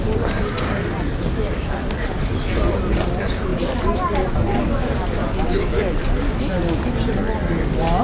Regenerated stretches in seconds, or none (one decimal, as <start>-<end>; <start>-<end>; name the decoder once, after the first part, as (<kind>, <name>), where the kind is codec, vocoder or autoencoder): none